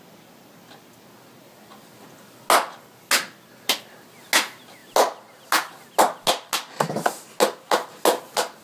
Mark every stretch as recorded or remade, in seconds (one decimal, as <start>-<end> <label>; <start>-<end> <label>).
0.0-8.6 recorded